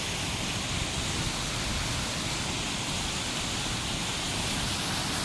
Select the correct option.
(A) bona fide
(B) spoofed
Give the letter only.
A